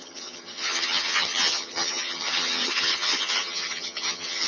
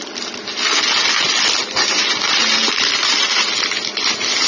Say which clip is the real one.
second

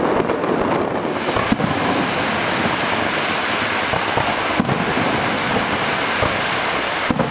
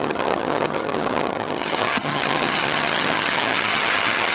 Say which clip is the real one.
first